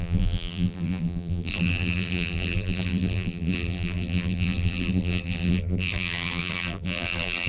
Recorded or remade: remade